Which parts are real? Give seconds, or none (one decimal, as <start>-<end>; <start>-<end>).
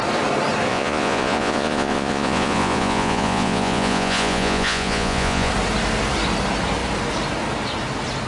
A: 0.0-0.7; 5.5-8.3